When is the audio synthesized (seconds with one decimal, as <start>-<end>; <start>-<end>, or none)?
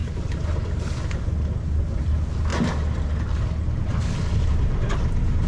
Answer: 0.0-1.2